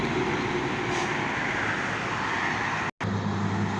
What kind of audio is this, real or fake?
real